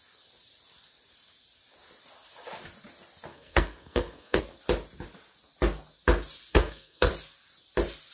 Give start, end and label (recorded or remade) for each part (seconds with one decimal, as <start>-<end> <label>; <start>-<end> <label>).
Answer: 0.0-3.3 recorded; 3.3-4.4 remade; 4.4-6.5 recorded; 6.5-7.1 remade; 7.1-8.1 recorded